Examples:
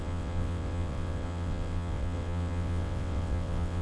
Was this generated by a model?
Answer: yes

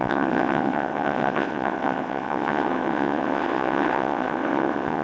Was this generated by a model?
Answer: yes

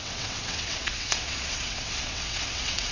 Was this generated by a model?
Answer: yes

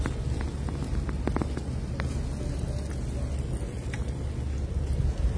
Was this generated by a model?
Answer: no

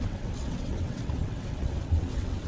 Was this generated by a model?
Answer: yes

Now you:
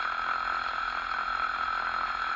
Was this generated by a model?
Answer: no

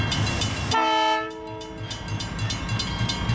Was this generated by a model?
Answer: no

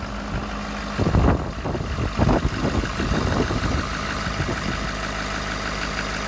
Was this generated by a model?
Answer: no